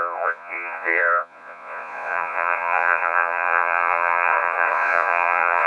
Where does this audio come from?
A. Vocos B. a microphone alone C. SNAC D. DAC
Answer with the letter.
A